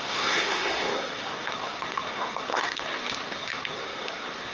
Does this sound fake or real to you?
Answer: fake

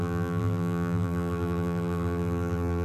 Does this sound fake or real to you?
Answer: fake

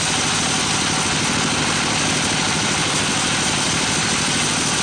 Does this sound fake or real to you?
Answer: real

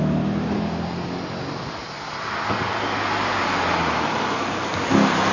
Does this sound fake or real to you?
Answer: real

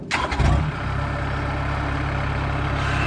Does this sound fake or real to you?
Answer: real